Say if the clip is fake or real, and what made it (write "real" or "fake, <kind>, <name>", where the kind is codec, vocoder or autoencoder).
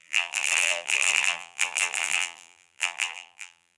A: fake, vocoder, BigVGAN v2